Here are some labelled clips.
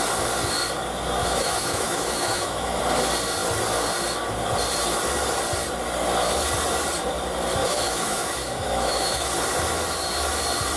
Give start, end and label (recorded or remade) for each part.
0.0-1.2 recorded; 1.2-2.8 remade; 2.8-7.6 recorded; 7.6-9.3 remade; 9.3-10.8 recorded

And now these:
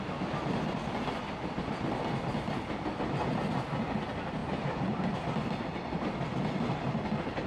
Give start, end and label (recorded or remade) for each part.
0.0-7.5 recorded

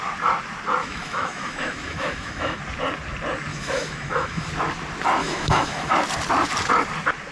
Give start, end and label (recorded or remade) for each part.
0.0-0.8 recorded; 0.8-2.6 remade; 2.6-3.5 recorded; 3.5-4.5 remade; 4.5-5.2 recorded; 5.2-5.9 remade; 5.9-7.3 recorded

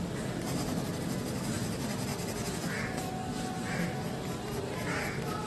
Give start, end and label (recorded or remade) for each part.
0.0-5.5 recorded

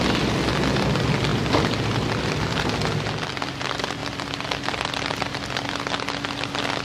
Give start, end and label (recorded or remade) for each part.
0.0-6.8 recorded